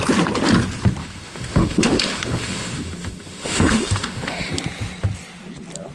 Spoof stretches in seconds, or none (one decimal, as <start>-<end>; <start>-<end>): 1.0-4.5